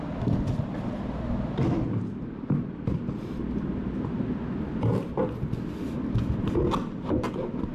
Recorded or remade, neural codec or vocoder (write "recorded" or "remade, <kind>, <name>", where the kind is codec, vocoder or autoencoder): recorded